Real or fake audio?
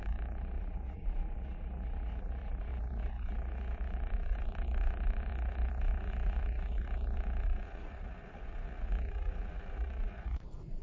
fake